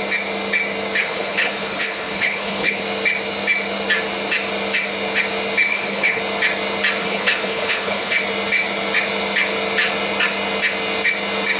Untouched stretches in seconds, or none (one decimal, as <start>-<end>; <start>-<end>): 0.0-1.0; 2.8-5.7; 6.2-7.0; 8.2-11.6